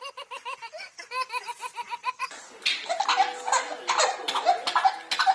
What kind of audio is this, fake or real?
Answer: real